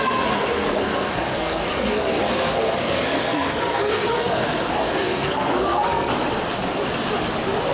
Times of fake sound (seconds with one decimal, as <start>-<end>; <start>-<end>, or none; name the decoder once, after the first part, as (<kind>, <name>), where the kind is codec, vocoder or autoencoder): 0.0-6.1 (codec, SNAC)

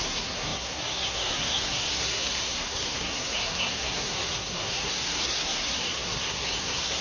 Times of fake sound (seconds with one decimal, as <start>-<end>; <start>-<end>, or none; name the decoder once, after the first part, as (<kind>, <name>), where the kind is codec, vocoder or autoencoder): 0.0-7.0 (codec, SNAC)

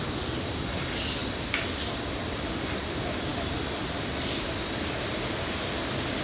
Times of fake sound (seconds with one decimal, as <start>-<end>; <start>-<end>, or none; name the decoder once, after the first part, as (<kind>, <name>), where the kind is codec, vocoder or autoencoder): 1.2-2.5 (vocoder, BigVGAN v2); 3.3-5.1

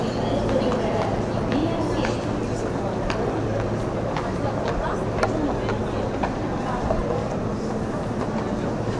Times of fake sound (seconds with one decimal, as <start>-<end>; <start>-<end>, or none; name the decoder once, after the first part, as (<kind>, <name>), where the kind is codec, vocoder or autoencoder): 5.8-6.4 (vocoder, BigVGAN v2)

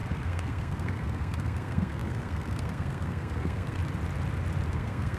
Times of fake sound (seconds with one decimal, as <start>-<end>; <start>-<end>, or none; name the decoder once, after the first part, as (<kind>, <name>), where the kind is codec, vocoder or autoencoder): 0.0-3.8 (codec, SNAC); 4.7-5.2

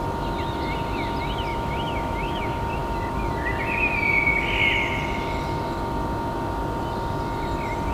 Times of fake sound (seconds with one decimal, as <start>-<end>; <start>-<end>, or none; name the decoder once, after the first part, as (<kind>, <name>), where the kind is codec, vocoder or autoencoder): 1.5-2.4 (autoencoder, DAC-VAE)

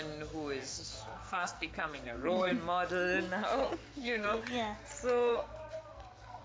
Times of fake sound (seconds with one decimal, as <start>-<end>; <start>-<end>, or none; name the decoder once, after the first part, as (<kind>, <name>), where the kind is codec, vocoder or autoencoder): 0.7-2.5 (codec, SNAC); 3.6-4.4; 5.3-6.4